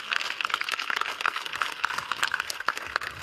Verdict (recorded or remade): remade